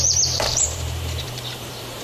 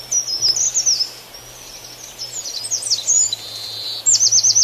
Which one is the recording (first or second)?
second